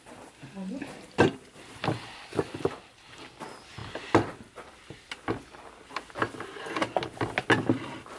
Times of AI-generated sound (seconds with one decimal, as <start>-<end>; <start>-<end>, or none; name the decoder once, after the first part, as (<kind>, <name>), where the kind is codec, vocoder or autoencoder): none